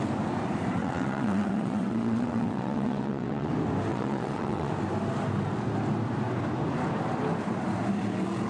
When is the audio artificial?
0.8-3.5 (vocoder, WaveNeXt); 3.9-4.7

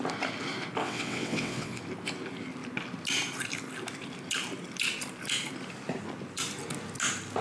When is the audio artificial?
0.8-1.8 (vocoder, WaveNeXt)

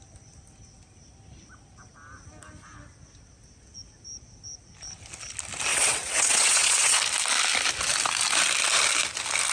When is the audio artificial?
5.7-7.0 (vocoder, WaveNeXt)

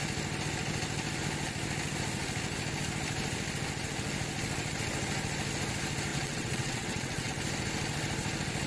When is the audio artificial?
6.1-7.3 (vocoder, WaveNeXt)

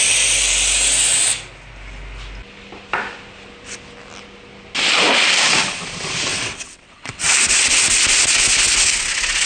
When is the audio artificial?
6.3-7.3 (vocoder, WaveNeXt)

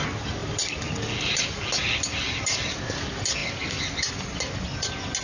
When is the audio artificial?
none

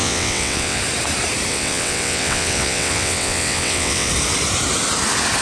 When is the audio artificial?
0.0-0.8 (vocoder, WaveNeXt); 1.5-4.1